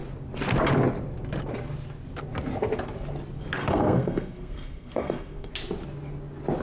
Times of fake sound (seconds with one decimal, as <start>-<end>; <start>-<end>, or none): 3.6-5.5